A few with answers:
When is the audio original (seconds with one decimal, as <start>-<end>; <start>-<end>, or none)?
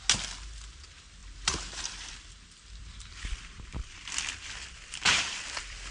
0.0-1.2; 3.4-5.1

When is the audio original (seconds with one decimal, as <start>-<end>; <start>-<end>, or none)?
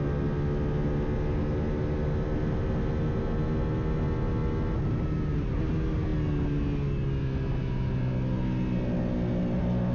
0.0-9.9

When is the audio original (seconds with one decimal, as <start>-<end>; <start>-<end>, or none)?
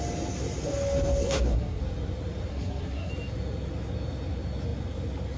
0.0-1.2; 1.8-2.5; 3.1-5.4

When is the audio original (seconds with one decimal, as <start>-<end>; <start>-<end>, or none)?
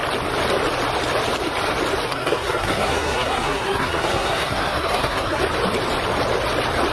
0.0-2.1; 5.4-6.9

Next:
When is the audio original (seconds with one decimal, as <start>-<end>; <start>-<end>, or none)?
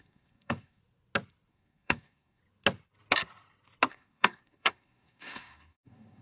0.8-1.5; 2.4-3.9